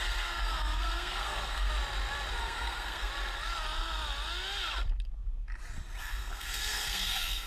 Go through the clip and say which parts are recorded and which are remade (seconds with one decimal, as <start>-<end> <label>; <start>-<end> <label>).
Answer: 0.0-1.7 remade; 1.7-2.4 recorded; 2.4-3.1 remade; 3.1-6.0 recorded; 6.0-7.5 remade